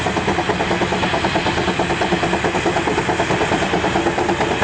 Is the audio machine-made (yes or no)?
no